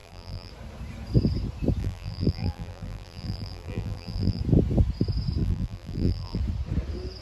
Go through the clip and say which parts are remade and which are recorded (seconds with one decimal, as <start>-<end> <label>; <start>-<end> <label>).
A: 0.0-0.5 remade; 0.5-1.8 recorded; 1.8-4.4 remade; 4.4-5.4 recorded; 5.4-6.4 remade; 6.4-7.2 recorded